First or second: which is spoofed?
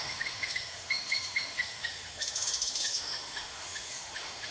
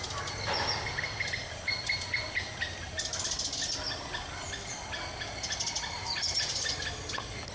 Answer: first